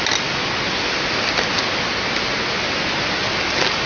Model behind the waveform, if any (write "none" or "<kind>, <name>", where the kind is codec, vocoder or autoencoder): none